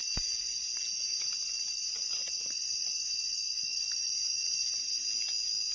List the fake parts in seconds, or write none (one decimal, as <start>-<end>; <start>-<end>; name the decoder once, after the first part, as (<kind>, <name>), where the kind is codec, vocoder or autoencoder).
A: 1.1-3.1 (vocoder, BigVGAN v2); 3.7-4.7